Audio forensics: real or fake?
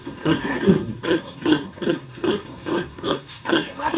fake